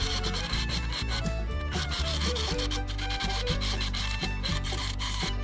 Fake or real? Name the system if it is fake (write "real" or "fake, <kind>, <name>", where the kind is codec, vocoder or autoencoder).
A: fake, vocoder, BigVGAN v2